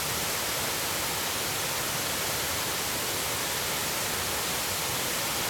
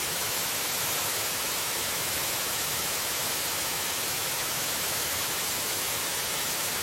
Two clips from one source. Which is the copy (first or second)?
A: second